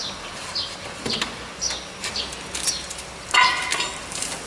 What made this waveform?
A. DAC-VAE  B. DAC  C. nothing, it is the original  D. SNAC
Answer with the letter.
C